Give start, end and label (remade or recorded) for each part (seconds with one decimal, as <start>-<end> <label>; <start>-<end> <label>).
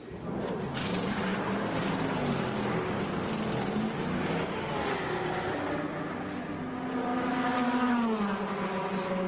0.0-9.3 recorded